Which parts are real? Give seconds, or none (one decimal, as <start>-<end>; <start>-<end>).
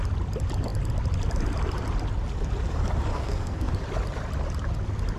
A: 0.0-3.1; 3.7-5.2